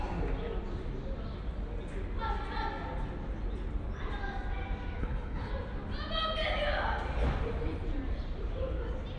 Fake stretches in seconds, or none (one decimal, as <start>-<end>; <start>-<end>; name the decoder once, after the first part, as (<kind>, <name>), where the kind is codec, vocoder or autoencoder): 5.0-5.5 (codec, HILCodec)

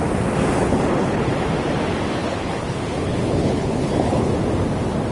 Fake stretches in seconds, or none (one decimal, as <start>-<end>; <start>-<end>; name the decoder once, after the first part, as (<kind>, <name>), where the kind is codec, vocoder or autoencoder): 0.6-1.3 (codec, HILCodec); 2.2-4.3

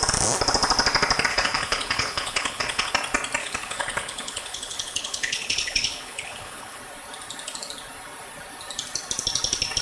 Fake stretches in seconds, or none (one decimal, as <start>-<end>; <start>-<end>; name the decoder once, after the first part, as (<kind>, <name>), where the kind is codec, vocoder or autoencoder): 1.3-2.9 (codec, HILCodec); 3.4-6.8

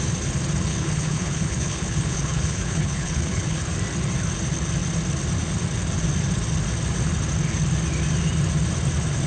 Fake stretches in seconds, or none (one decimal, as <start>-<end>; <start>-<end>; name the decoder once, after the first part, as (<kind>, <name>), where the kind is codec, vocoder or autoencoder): 0.7-3.6 (codec, HILCodec)

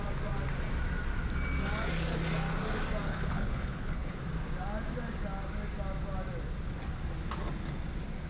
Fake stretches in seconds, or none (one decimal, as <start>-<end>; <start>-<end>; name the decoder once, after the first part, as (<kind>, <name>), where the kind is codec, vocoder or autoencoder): 3.1-4.2 (codec, HILCodec)